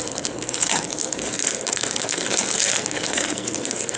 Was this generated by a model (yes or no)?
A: yes